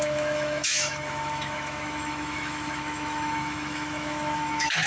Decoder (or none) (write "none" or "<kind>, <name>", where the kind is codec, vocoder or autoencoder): autoencoder, DAC-VAE